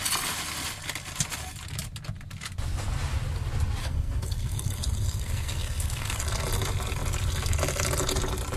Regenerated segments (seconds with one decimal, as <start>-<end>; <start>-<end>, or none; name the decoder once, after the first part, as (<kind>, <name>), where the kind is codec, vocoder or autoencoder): 3.8-6.2 (codec, SNAC)